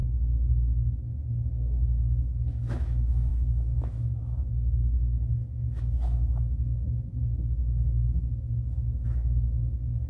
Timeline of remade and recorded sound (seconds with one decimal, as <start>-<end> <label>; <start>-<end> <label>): 0.0-1.3 recorded; 1.3-10.1 remade